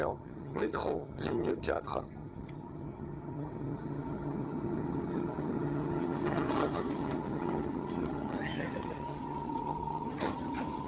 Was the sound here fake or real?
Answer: fake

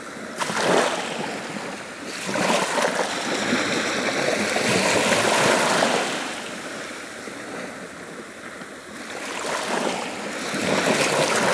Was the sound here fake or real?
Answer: real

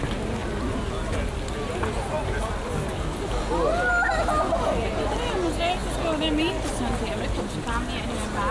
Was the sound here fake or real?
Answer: real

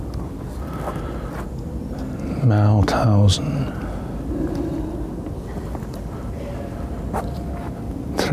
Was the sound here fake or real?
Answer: real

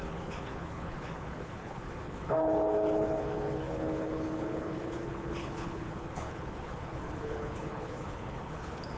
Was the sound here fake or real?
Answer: fake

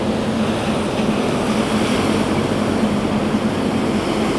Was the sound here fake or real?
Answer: real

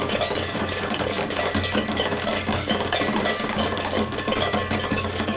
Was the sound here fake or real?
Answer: fake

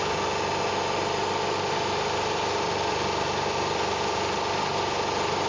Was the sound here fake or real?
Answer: real